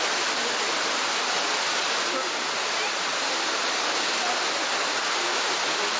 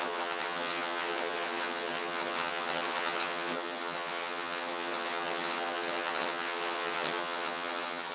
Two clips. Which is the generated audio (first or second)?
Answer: second